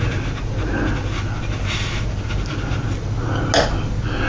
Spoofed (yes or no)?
no